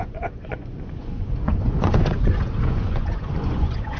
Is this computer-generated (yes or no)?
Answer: yes